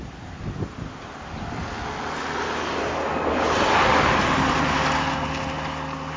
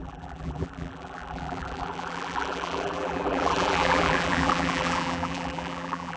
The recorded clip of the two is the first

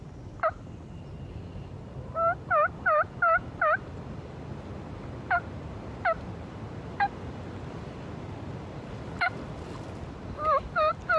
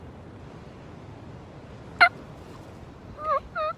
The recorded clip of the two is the second